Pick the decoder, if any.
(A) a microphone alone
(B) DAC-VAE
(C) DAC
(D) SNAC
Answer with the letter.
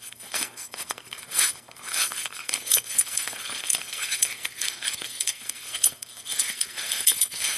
D